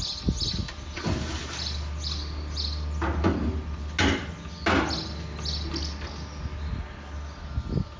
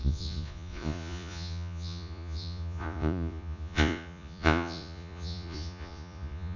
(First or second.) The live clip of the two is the first